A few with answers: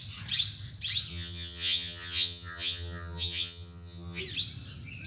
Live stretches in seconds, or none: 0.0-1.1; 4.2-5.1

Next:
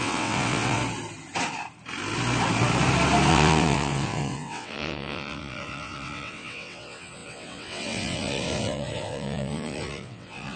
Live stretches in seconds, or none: 0.8-3.3

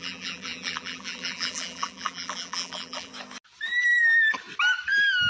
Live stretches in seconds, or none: 3.1-5.3

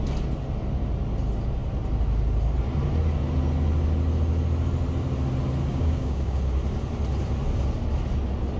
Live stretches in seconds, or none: 0.0-5.7; 6.4-8.6

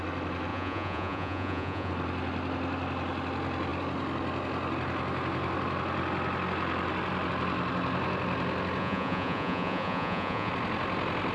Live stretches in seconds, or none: 0.0-0.5; 1.9-8.8; 10.5-11.3

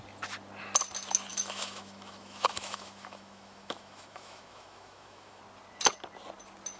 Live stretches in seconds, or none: 0.0-1.3; 5.4-6.8